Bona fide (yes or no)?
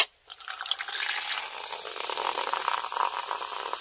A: yes